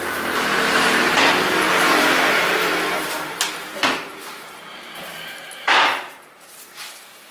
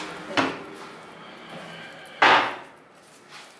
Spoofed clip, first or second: first